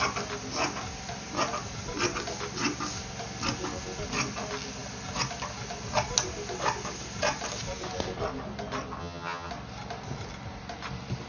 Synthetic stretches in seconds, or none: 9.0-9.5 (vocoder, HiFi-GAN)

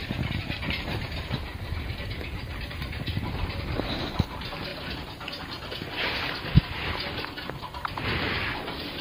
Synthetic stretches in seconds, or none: 0.0-4.7 (vocoder, BigVGAN v2); 7.6-9.0

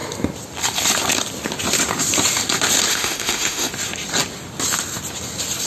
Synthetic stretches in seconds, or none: 2.9-3.7 (autoencoder, DAC-VAE)

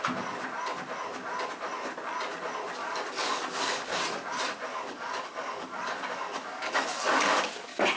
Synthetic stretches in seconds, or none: 2.8-4.0 (codec, DAC); 4.7-8.0

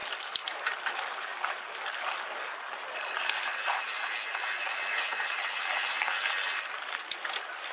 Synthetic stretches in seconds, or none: none

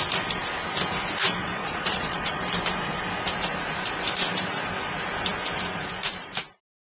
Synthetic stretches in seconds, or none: 1.4-2.4 (vocoder, Vocos)